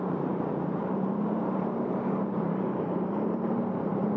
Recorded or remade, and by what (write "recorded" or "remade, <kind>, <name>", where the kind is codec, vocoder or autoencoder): remade, vocoder, BigVGAN v2